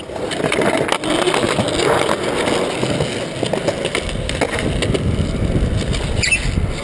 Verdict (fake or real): real